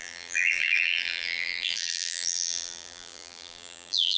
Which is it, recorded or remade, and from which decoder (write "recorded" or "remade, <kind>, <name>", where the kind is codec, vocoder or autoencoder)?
remade, vocoder, BigVGAN v2